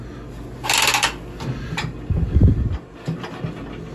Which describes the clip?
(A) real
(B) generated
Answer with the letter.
A